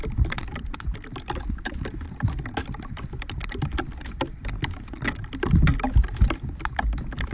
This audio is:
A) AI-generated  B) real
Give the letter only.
B